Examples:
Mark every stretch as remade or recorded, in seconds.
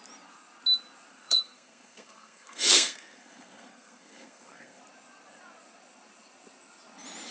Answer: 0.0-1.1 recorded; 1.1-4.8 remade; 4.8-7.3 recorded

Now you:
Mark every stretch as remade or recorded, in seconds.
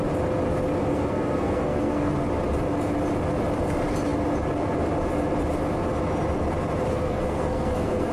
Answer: 0.0-0.9 recorded; 0.9-2.1 remade; 2.1-6.9 recorded; 6.9-8.1 remade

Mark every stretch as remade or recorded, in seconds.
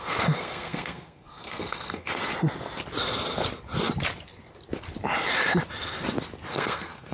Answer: 0.0-2.2 remade; 2.2-6.5 recorded; 6.5-7.1 remade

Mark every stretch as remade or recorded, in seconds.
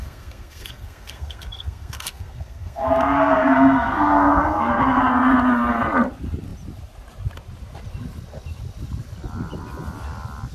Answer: 0.0-5.0 remade; 5.0-10.5 recorded